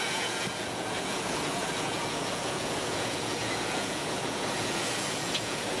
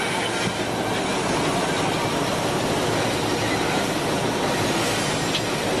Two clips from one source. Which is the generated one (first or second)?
first